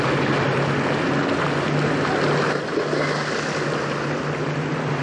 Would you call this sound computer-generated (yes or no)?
no